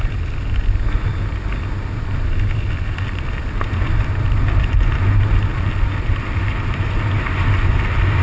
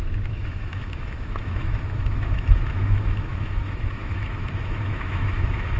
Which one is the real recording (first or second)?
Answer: first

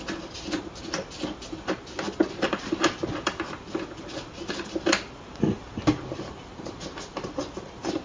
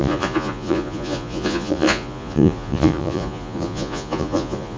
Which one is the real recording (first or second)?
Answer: first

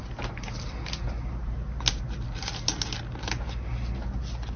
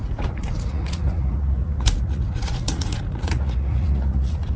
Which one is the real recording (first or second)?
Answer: first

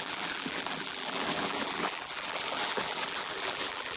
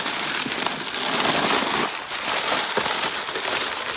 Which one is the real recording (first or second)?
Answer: second